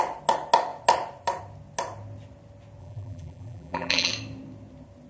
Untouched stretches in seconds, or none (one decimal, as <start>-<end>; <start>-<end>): 0.0-2.8; 4.1-5.1